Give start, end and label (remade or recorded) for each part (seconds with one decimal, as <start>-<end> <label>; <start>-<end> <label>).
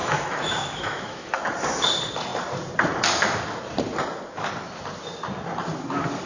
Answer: 0.0-1.3 remade; 1.3-6.3 recorded